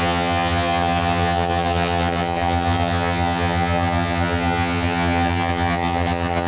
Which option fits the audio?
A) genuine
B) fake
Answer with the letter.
B